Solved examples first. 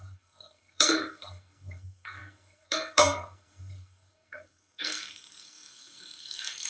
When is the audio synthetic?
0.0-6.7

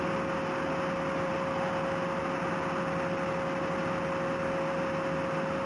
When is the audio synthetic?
none

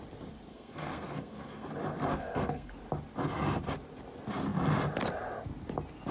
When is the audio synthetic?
0.5-1.7; 2.1-2.7